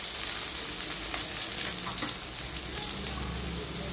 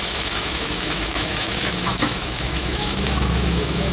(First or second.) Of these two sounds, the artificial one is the second